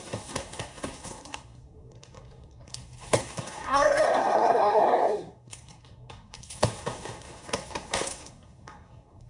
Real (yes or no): no